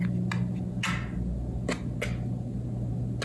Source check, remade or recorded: recorded